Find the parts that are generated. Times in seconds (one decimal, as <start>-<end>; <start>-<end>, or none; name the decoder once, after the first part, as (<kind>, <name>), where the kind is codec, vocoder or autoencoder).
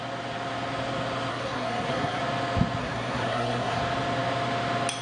1.3-2.2 (codec, SNAC); 2.8-3.8